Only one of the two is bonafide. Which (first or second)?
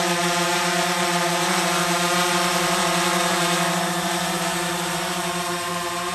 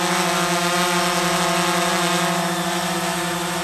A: second